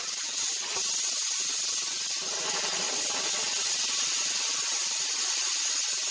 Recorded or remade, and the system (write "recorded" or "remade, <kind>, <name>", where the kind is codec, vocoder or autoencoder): recorded